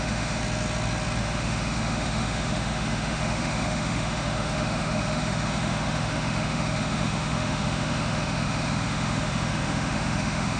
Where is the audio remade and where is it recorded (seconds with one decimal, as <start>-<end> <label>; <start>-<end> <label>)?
0.0-0.4 remade; 0.4-1.2 recorded; 1.2-10.6 remade